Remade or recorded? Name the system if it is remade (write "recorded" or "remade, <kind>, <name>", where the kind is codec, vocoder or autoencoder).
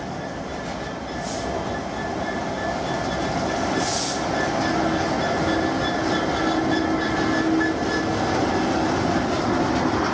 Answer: recorded